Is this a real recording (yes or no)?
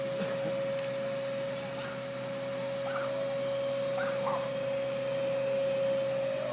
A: yes